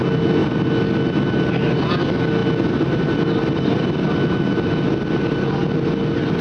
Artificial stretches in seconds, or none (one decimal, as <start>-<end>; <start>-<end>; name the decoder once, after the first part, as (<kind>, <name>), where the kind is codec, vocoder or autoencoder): none